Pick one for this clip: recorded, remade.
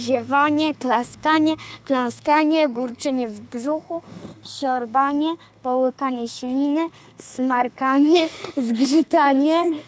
remade